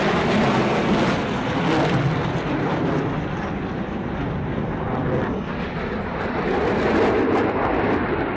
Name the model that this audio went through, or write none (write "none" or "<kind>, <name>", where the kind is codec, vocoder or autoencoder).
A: none